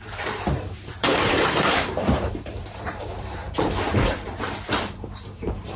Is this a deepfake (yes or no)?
yes